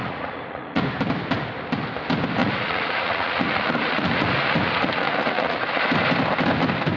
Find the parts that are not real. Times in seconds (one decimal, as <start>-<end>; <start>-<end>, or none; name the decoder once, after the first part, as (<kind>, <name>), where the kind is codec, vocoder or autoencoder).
0.0-0.8 (vocoder, Vocos); 2.4-5.8